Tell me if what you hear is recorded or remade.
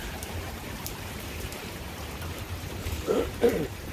remade